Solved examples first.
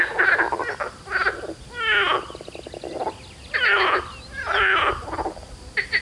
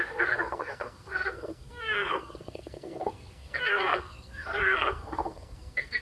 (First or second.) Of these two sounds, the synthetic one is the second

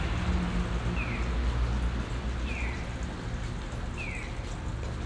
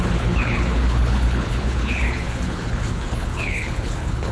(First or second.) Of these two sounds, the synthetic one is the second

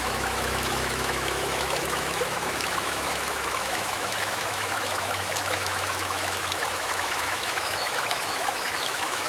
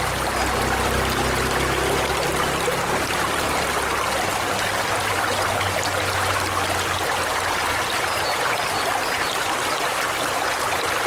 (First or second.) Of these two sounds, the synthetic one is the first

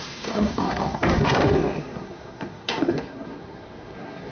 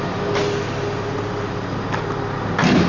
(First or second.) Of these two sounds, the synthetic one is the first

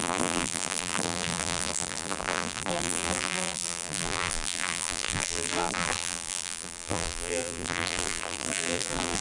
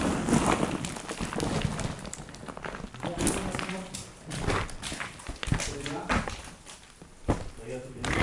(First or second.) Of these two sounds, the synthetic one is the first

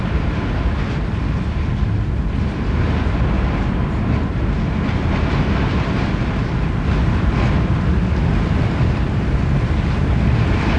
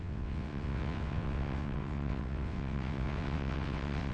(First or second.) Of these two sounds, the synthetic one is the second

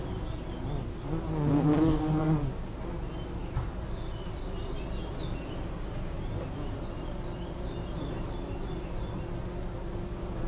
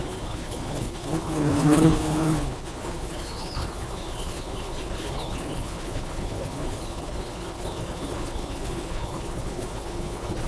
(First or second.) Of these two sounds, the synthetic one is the second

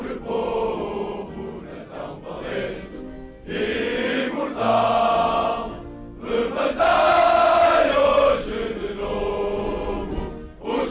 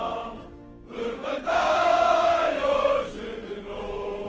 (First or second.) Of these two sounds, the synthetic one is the second